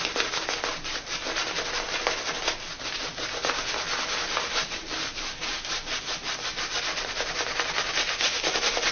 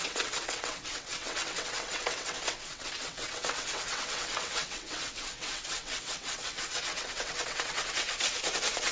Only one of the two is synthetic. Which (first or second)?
second